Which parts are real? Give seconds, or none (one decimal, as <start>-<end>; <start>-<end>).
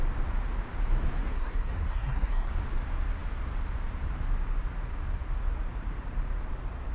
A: 0.0-1.2; 2.5-6.9